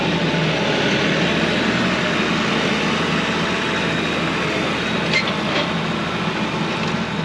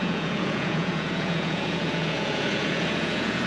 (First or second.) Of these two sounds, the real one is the first